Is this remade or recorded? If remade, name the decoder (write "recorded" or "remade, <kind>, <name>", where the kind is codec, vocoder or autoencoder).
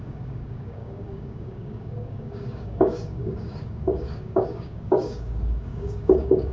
remade, codec, DAC